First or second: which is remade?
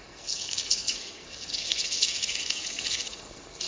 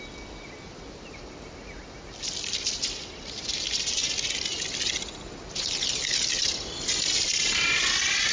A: first